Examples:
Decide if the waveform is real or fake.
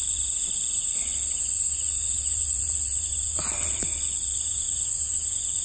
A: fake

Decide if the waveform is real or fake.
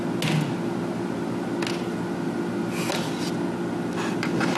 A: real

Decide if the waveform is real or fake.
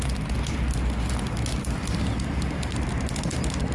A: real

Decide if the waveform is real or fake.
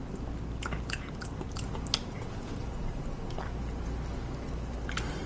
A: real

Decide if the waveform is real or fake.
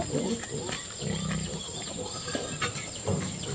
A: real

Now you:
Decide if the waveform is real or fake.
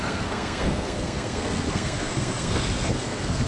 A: fake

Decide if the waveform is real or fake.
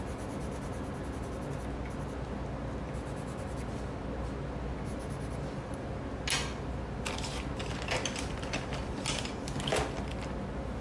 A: real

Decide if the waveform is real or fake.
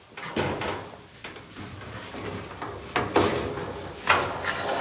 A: real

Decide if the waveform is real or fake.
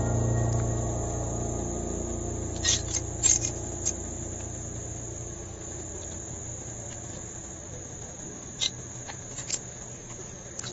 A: real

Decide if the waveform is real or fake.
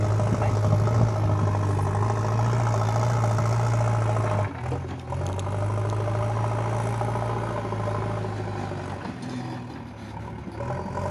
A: real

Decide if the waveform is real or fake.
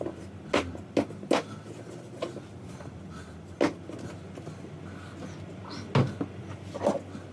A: real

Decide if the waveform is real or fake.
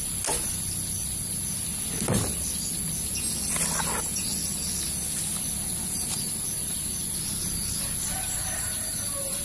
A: real